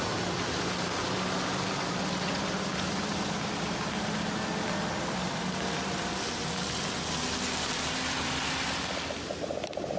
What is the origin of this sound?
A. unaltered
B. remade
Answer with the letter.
A